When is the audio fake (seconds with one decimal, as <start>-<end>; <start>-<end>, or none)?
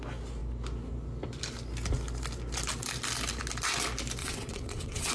4.2-5.1